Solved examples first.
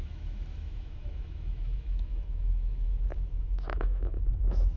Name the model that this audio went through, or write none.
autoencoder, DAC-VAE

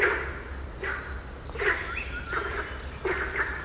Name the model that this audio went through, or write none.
none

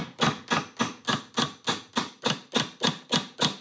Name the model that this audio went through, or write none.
none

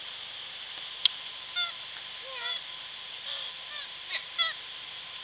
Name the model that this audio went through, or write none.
none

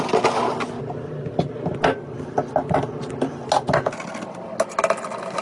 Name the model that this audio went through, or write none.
none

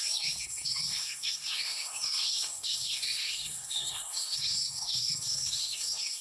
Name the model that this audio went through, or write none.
codec, SNAC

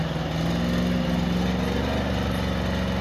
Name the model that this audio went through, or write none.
none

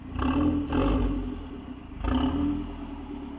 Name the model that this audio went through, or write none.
none